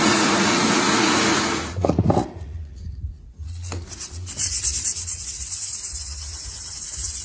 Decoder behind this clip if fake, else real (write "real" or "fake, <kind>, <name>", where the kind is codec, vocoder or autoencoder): fake, vocoder, Vocos